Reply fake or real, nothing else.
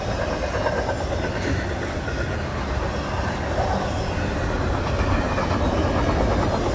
real